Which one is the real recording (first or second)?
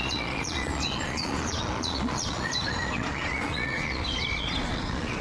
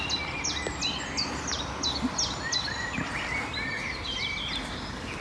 second